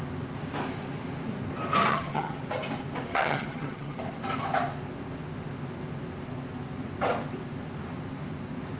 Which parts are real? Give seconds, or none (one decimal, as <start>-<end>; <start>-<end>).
0.0-1.9; 2.4-3.1; 4.0-8.8